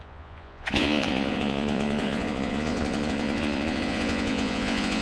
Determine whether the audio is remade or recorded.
remade